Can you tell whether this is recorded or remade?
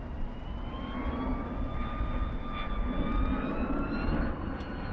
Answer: recorded